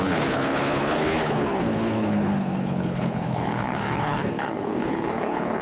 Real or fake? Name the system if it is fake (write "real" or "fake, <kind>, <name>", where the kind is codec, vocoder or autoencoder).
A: fake, codec, HILCodec